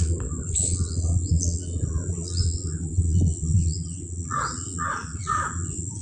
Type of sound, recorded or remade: remade